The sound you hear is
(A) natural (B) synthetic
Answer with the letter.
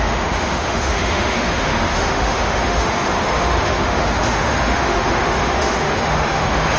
B